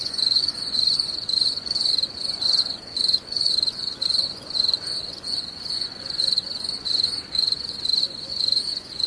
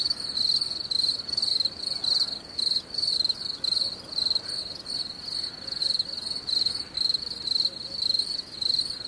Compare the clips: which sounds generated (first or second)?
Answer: first